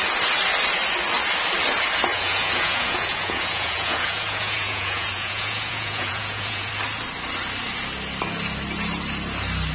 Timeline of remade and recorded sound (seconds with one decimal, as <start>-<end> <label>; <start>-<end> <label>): 0.0-2.1 recorded; 2.1-6.7 remade; 6.7-9.7 recorded